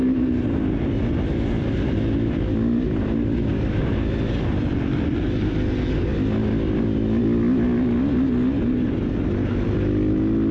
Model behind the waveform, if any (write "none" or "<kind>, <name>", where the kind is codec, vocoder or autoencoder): none